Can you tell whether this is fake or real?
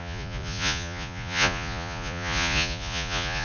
fake